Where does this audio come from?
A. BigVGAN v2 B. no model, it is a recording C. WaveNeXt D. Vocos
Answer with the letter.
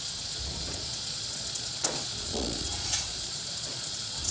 D